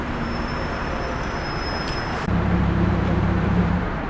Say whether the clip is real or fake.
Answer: fake